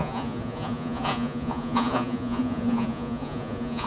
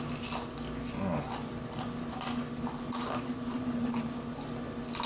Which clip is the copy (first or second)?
first